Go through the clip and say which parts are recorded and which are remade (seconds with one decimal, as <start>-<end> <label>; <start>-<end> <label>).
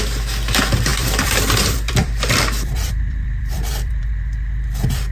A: 0.0-0.9 recorded; 0.9-4.0 remade; 4.0-5.1 recorded